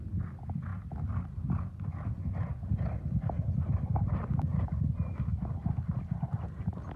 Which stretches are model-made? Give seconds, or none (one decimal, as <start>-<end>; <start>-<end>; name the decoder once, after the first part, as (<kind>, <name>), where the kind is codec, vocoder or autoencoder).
none